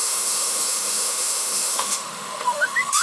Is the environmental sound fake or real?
fake